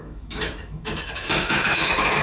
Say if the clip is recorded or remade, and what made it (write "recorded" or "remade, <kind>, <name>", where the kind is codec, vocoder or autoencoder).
remade, autoencoder, DAC-VAE